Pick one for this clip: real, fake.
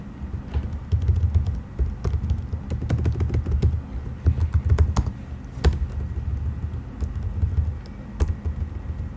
real